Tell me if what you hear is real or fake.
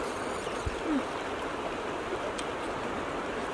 real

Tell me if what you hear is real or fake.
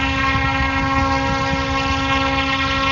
real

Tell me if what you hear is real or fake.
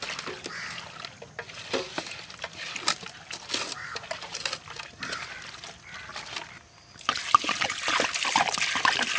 real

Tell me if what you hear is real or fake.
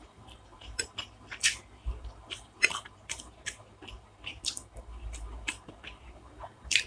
fake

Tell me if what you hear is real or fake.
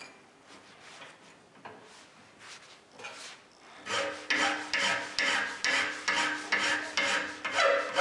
real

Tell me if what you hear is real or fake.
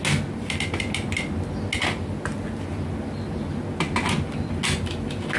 real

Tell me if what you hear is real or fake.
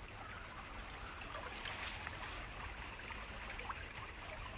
real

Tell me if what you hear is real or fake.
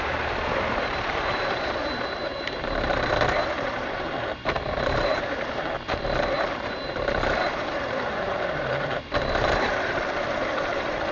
fake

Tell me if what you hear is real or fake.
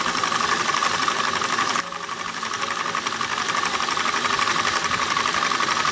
real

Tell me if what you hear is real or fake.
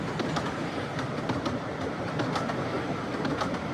real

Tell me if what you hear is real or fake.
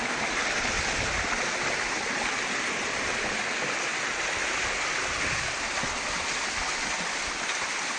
real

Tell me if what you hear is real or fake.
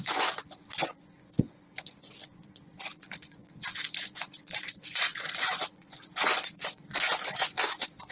fake